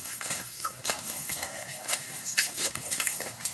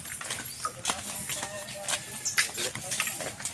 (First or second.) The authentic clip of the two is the second